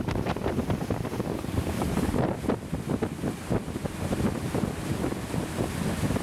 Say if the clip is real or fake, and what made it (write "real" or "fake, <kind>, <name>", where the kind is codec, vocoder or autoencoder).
fake, vocoder, BigVGAN v2